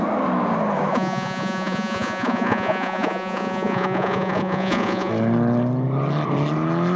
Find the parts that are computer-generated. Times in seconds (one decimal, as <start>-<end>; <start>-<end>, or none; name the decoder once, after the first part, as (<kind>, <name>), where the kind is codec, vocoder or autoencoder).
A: 0.9-5.1 (vocoder, Vocos)